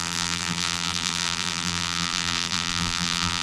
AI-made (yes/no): yes